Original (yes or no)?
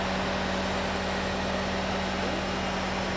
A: yes